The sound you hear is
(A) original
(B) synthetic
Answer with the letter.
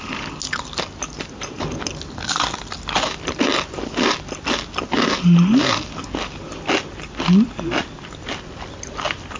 A